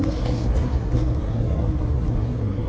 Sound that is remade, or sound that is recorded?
remade